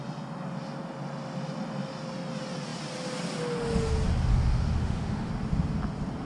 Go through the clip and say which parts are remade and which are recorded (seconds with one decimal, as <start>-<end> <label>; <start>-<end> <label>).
0.0-4.3 recorded; 4.3-5.3 remade; 5.3-6.2 recorded